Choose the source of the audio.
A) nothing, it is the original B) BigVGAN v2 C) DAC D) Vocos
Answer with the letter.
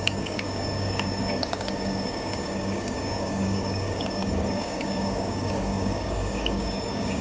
C